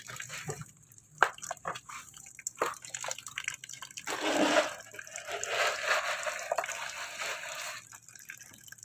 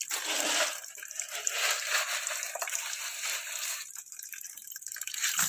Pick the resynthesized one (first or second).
second